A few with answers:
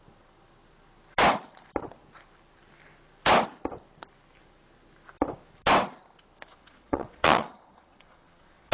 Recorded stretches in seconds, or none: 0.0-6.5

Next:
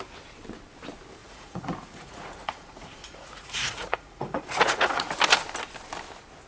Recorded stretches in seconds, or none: 0.0-1.2; 5.1-6.5

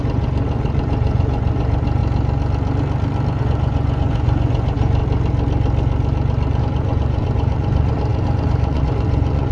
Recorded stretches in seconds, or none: 2.0-3.4; 5.0-6.6

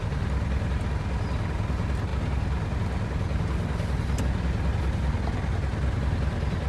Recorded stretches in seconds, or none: 0.0-6.7

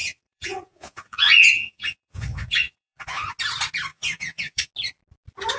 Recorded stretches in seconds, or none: 3.3-3.9; 4.7-5.6

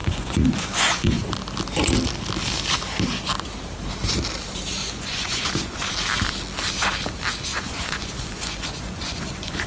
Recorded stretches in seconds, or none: 1.4-4.8; 5.9-7.5

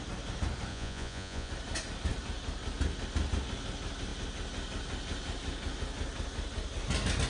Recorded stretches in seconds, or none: 0.0-0.7; 1.5-7.3